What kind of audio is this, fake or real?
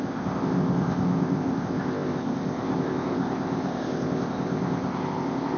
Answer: fake